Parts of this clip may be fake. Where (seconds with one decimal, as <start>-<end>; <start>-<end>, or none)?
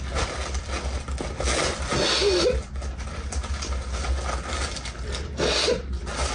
none